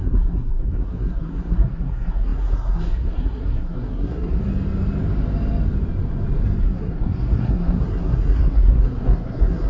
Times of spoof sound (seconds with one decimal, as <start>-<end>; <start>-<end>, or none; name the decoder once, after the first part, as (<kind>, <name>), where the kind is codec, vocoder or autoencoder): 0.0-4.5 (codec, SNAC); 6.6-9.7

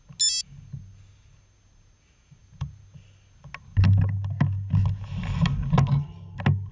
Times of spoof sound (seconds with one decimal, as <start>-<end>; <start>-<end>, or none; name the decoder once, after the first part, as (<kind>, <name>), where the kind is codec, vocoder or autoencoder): none

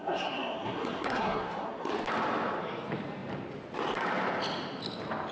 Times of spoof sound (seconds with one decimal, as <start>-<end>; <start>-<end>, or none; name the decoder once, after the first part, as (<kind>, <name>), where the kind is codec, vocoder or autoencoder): 0.0-1.9 (codec, SNAC)

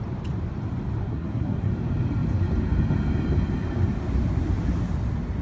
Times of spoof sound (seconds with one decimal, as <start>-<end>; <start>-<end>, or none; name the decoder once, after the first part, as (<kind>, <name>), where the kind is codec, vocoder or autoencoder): 1.0-1.7 (codec, SNAC)

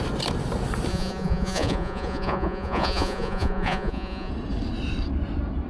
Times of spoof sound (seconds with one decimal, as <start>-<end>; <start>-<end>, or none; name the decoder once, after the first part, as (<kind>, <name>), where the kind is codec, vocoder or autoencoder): 0.9-4.3 (vocoder, Vocos)

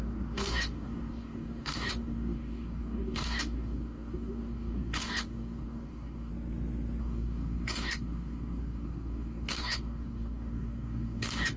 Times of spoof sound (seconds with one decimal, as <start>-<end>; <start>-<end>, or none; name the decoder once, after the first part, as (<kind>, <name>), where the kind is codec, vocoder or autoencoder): 0.0-6.3 (codec, DAC); 7.0-11.6